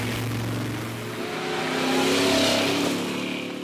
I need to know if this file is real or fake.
real